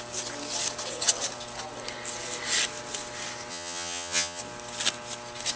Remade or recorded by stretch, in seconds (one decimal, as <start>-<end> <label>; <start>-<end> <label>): 0.0-3.5 recorded; 3.5-4.4 remade; 4.4-5.6 recorded